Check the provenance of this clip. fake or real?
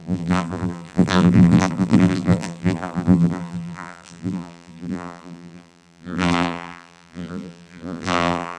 fake